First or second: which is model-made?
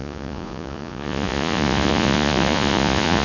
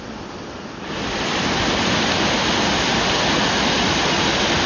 first